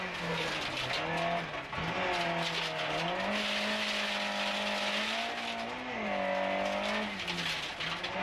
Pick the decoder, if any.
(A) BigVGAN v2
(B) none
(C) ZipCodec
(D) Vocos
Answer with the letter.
B